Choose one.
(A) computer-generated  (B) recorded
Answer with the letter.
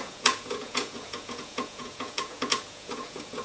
A